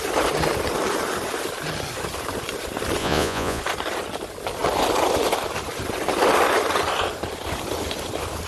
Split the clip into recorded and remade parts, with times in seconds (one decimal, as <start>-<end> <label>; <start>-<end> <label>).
0.0-3.0 recorded; 3.0-3.6 remade; 3.6-8.5 recorded